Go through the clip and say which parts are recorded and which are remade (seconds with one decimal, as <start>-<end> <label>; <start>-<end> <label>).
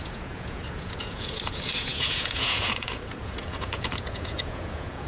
0.0-5.1 remade